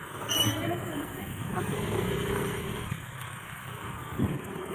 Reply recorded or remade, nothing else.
remade